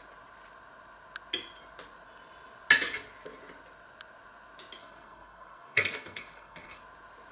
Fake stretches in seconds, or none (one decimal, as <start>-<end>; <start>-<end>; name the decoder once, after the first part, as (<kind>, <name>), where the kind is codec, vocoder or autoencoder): 4.8-6.8 (codec, SNAC)

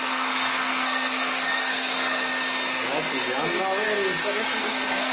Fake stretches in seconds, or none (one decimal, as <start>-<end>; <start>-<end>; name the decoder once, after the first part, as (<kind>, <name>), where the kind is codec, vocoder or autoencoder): 0.0-2.3 (codec, SNAC); 4.6-5.1

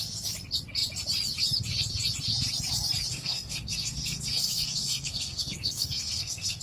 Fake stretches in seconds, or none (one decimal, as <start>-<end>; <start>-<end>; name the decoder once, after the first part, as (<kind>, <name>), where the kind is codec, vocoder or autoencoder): 3.1-6.6 (codec, SNAC)